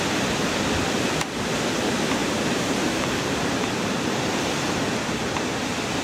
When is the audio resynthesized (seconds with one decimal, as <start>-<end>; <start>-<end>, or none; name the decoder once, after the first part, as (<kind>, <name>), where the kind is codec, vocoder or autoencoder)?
2.2-4.8 (vocoder, BigVGAN v2)